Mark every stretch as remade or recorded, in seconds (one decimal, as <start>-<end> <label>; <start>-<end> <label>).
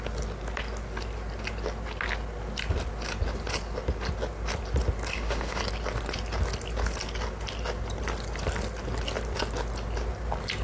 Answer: 0.0-5.1 recorded; 5.1-5.6 remade; 5.6-10.6 recorded